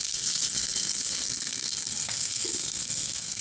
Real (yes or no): no